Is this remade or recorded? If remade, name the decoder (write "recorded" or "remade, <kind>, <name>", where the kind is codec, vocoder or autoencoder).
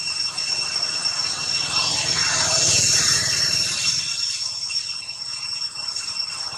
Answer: recorded